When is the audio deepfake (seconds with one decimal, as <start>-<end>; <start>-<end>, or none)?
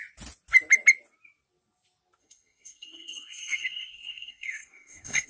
2.2-5.3